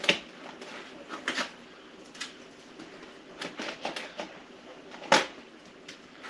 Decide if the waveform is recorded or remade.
recorded